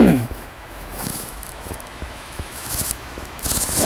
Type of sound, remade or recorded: remade